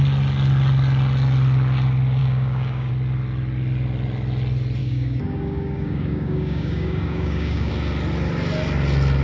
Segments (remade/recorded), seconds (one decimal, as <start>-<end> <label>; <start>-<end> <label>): 0.0-2.2 recorded; 2.2-2.9 remade; 2.9-4.8 recorded; 4.8-7.7 remade; 7.7-9.2 recorded